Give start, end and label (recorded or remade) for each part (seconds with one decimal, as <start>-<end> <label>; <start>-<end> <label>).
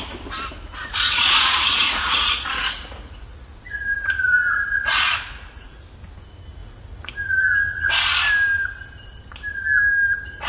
0.0-0.8 recorded; 0.8-5.8 remade; 5.8-6.6 recorded; 6.6-7.9 remade; 7.9-10.5 recorded